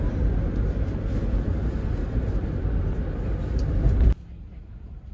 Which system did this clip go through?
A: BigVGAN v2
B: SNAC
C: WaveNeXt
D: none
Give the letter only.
D